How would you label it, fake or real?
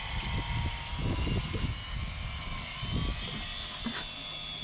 real